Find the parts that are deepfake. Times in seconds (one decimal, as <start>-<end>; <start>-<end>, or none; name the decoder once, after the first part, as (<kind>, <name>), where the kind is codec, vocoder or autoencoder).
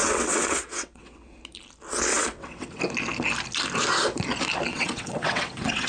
0.0-1.4 (vocoder, WaveNeXt); 2.1-2.8; 4.7-5.9